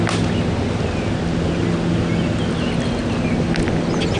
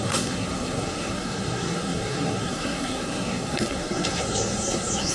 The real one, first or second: first